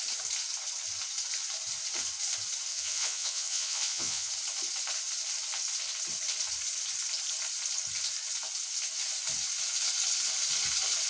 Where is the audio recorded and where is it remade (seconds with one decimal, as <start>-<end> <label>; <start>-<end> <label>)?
0.0-2.7 recorded; 2.7-4.3 remade; 4.3-11.1 recorded

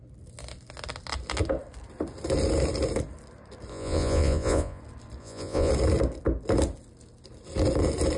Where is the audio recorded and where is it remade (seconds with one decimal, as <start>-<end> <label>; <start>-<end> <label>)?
0.0-3.7 recorded; 3.7-4.8 remade; 4.8-5.2 recorded; 5.2-5.7 remade; 5.7-8.2 recorded

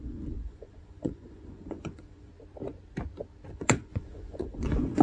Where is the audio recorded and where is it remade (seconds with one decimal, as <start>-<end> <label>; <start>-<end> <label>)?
0.0-2.3 remade; 2.3-3.5 recorded; 3.5-5.0 remade